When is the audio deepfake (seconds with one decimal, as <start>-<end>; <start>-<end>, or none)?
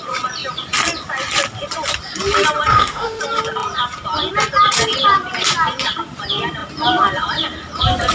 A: 2.7-3.2